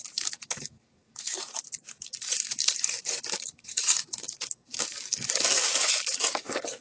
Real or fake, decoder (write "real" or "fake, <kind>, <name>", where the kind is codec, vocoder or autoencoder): fake, codec, DAC